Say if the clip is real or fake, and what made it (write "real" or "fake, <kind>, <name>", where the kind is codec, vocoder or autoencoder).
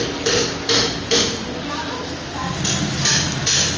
real